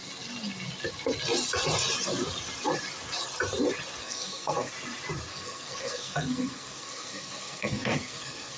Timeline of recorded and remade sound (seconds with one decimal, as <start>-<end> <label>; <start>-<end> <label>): 0.0-4.0 recorded; 4.0-4.7 remade; 4.7-5.3 recorded; 5.3-8.6 remade